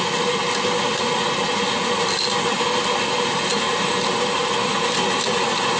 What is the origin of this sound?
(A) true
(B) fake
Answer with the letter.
A